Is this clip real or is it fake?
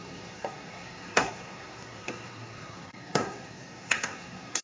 fake